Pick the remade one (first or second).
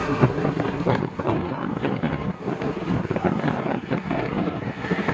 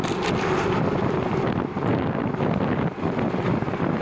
first